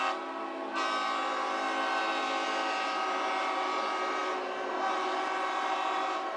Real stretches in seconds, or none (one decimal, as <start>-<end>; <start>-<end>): 0.0-6.4